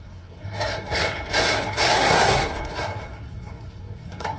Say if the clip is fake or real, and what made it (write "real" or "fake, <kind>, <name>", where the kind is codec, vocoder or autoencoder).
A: fake, codec, SNAC